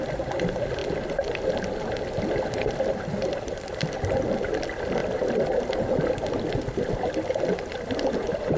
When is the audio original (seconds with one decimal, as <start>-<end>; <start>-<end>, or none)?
0.0-8.6